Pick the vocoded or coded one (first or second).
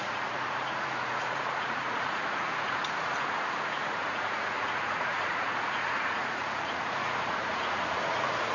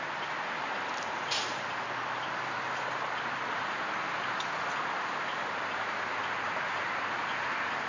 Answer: first